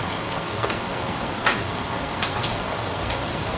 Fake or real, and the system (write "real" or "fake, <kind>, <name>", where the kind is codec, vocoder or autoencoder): fake, codec, SNAC